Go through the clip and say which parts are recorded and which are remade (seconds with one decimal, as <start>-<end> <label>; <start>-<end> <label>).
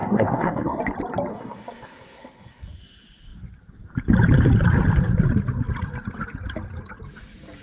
0.0-0.8 remade; 0.8-1.3 recorded; 1.3-2.8 remade; 2.8-7.6 recorded